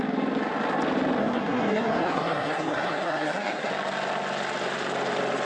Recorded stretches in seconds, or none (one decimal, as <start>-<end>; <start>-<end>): 0.0-1.2; 3.7-5.4